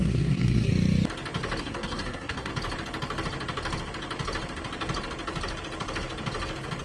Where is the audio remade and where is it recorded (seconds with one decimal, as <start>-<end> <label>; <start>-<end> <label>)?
0.0-0.7 remade; 0.7-1.6 recorded; 1.6-2.5 remade; 2.5-6.8 recorded